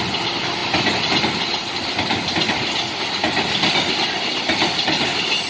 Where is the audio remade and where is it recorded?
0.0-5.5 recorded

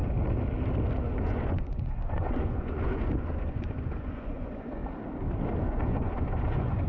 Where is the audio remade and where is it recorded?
0.0-1.0 recorded; 1.0-4.8 remade; 4.8-5.6 recorded; 5.6-6.9 remade

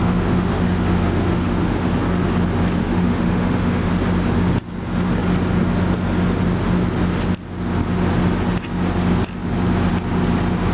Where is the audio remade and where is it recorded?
0.0-1.9 remade; 1.9-2.8 recorded; 2.8-3.9 remade; 3.9-10.7 recorded

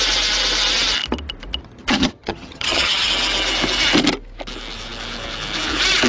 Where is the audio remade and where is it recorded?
0.0-1.6 recorded; 1.6-3.1 remade; 3.1-6.1 recorded

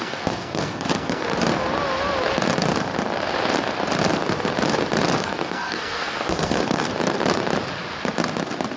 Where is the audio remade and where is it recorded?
0.0-1.3 remade; 1.3-5.2 recorded; 5.2-6.9 remade; 6.9-8.8 recorded